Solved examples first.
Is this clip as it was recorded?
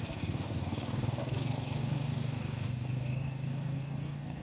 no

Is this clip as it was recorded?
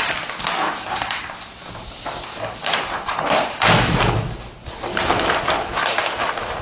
no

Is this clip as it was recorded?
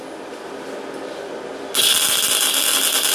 yes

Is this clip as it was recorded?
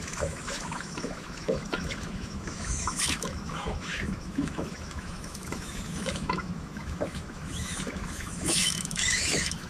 no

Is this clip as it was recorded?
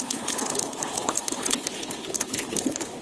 no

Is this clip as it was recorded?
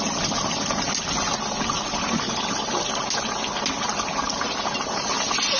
yes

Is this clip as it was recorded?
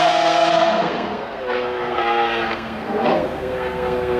no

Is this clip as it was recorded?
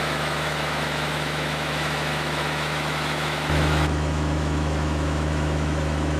no